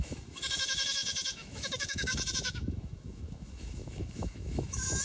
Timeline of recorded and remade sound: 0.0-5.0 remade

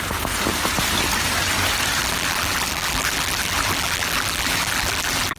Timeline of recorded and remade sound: 0.0-2.0 recorded; 2.0-5.4 remade

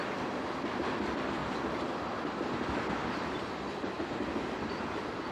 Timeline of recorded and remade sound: 0.0-5.3 recorded